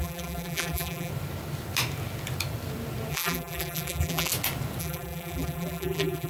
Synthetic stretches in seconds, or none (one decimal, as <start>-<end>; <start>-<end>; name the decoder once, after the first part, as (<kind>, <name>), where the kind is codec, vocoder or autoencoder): 0.0-1.1 (vocoder, BigVGAN v2); 3.1-4.3; 4.8-6.3